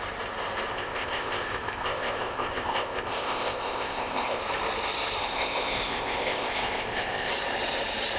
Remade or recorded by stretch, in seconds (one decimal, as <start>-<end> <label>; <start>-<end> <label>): 0.0-0.7 recorded; 0.7-4.4 remade; 4.4-5.2 recorded; 5.2-7.3 remade; 7.3-8.2 recorded